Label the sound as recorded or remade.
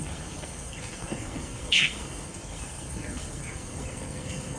remade